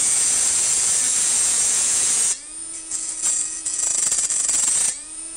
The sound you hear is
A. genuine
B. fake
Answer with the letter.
B